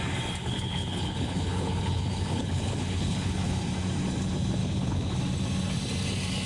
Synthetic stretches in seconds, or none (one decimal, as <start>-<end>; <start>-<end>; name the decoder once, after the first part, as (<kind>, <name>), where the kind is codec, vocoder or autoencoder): 0.4-3.6 (codec, HILCodec); 4.6-5.2